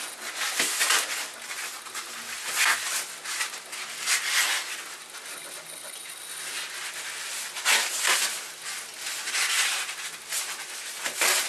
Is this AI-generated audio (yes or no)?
no